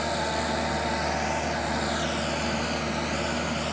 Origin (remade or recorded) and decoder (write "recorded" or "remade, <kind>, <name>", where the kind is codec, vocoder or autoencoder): recorded